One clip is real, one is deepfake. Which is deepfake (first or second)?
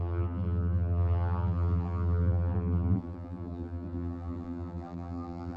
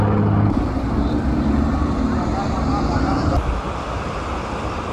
first